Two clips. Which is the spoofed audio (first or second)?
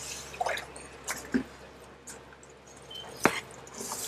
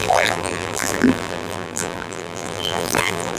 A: second